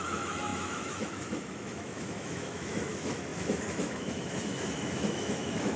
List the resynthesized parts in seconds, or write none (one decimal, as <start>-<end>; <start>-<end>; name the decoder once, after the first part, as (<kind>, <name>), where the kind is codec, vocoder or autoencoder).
0.0-5.8 (autoencoder, DAC-VAE)